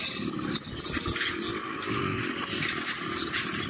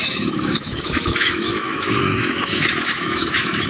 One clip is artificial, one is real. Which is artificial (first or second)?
second